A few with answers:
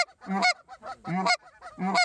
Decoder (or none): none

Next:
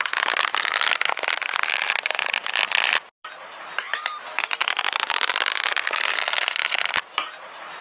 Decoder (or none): none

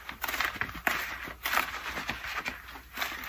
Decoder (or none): none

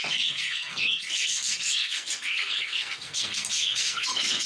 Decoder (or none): codec, SNAC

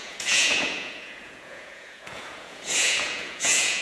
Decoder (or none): vocoder, Vocos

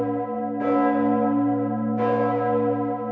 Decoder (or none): none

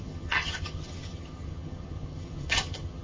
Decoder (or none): vocoder, HiFi-GAN